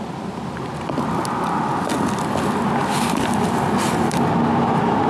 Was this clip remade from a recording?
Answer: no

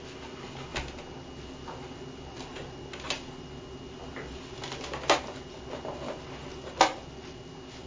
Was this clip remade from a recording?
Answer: no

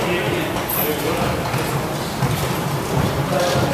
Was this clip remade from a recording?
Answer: no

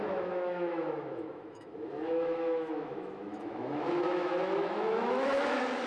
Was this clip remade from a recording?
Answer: yes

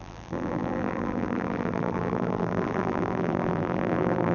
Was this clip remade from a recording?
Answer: yes